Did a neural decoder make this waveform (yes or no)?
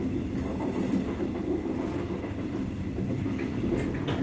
no